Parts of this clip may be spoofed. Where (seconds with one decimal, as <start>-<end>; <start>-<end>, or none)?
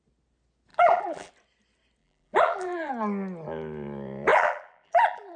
0.7-1.3; 2.0-2.9; 4.3-5.4